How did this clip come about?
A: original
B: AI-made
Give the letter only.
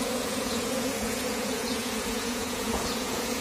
B